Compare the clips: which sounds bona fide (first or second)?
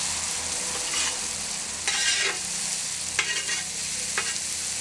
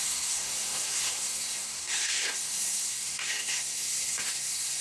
first